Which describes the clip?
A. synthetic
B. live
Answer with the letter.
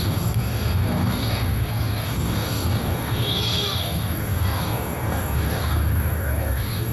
A